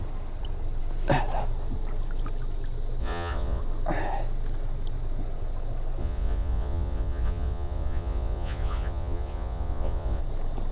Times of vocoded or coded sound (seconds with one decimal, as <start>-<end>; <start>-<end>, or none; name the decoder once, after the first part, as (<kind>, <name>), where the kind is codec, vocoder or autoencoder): 3.0-3.6 (vocoder, Vocos); 6.0-10.2